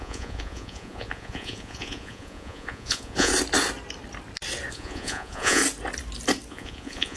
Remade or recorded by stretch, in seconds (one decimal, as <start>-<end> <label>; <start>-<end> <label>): 0.0-3.3 remade; 3.3-4.7 recorded; 4.7-5.6 remade; 5.6-6.5 recorded; 6.5-7.2 remade